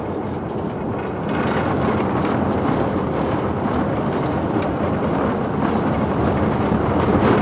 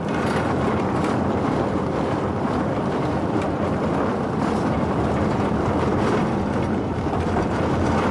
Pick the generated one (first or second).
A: second